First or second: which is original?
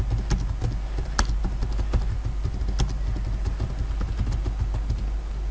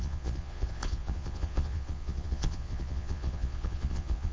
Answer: first